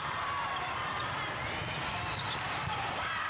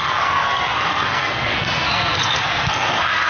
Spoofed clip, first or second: second